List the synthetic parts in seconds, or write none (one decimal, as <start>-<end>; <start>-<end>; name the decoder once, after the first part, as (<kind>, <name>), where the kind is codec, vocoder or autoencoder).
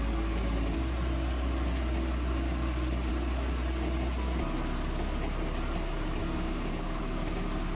6.2-7.0 (codec, DAC)